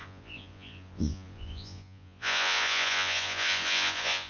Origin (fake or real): fake